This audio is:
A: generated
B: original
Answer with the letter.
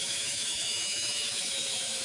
A